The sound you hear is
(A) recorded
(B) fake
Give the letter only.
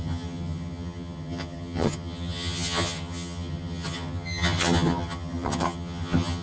B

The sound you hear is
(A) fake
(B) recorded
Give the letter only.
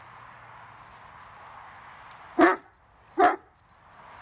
B